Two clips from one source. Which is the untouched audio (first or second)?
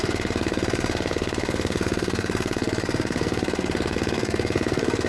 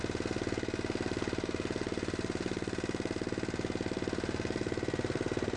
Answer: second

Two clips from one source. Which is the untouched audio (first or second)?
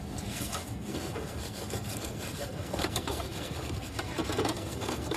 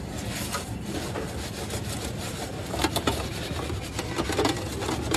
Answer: second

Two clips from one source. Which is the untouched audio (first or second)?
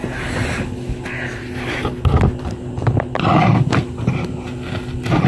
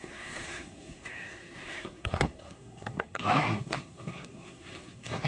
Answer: first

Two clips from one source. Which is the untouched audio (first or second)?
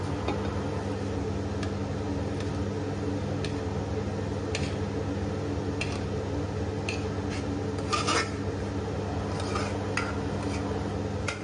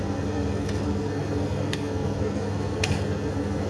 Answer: first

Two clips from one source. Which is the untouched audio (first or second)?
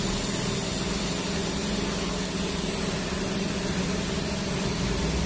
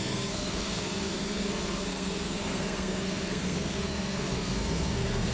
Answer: first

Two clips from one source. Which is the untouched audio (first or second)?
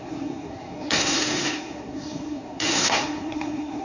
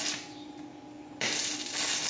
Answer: second